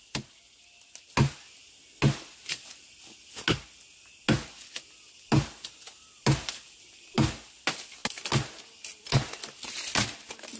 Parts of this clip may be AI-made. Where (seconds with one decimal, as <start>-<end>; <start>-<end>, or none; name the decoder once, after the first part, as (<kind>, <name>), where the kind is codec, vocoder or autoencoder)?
none